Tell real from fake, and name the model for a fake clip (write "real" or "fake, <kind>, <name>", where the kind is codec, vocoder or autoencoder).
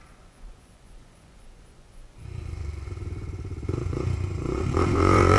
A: fake, vocoder, Vocos